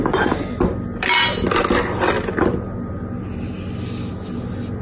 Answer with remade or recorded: recorded